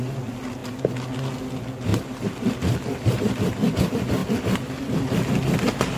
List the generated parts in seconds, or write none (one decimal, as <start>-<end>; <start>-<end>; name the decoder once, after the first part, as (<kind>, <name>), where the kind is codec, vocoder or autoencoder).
none